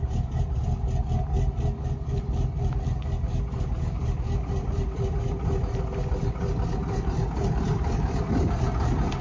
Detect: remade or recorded recorded